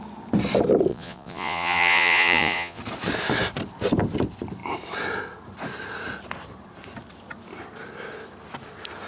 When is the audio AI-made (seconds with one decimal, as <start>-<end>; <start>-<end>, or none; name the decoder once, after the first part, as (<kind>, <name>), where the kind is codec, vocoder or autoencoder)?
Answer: 0.9-2.8 (vocoder, Vocos)